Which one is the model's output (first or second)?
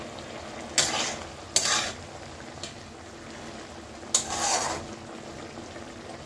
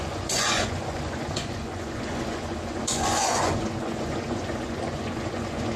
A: second